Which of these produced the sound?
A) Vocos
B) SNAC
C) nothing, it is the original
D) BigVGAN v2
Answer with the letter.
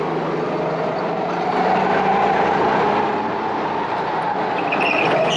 C